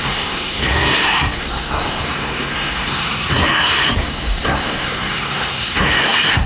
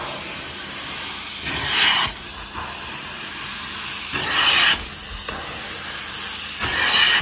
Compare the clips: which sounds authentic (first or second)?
second